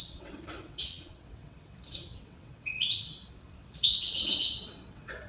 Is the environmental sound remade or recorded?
remade